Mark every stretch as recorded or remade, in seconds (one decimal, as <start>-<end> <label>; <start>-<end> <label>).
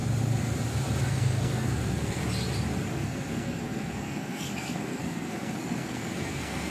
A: 0.0-1.1 recorded; 1.1-2.2 remade; 2.2-2.9 recorded; 2.9-6.7 remade